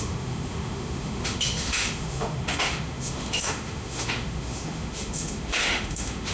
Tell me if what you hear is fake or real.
fake